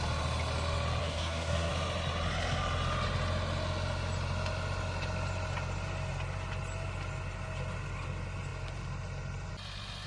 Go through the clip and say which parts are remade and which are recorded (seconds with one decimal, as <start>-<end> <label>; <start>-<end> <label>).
0.0-1.0 recorded; 1.0-1.7 remade; 1.7-10.1 recorded